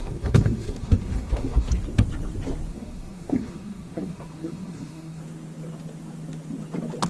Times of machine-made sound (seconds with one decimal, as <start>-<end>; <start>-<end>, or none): 0.0-1.7; 2.7-5.2

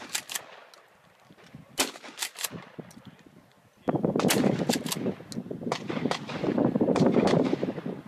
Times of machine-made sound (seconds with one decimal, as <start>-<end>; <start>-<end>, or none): 6.4-7.5

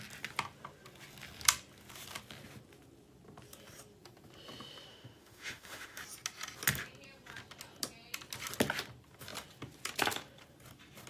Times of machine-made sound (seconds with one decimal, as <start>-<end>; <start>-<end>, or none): 4.9-6.0

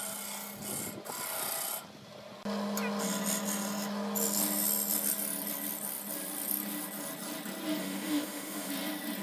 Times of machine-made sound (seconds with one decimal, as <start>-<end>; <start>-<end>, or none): 7.8-8.7

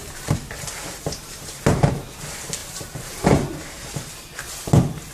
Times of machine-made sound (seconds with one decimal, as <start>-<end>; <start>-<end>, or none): 0.0-2.1; 2.6-4.1